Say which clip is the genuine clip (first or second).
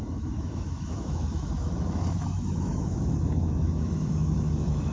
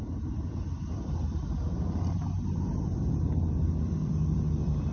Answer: second